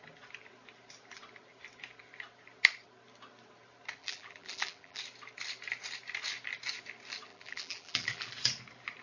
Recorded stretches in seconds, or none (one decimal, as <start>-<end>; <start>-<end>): 0.0-4.0; 5.0-7.3; 8.3-9.0